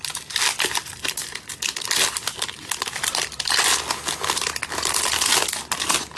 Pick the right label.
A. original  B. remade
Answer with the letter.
A